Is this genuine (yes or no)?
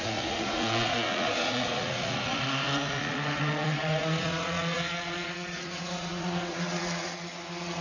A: no